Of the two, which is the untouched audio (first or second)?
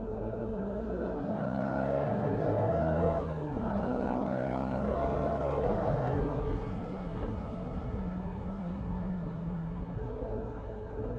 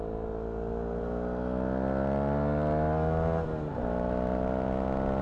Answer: second